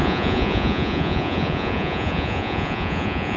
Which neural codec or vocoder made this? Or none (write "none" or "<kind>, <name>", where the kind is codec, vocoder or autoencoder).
vocoder, Vocos